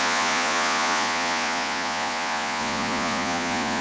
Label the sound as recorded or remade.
remade